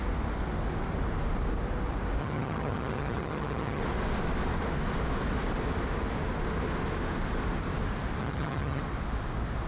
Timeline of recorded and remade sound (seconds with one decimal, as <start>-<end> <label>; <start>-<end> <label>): 0.0-2.2 recorded; 2.2-3.8 remade; 3.8-8.2 recorded; 8.2-8.8 remade; 8.8-9.7 recorded